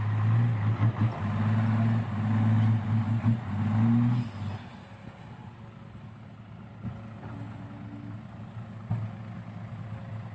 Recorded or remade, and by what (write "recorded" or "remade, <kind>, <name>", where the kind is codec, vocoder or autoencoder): recorded